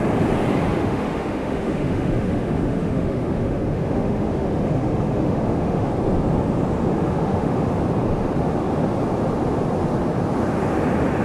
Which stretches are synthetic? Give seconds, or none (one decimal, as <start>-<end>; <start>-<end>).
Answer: 0.8-5.9; 6.9-7.8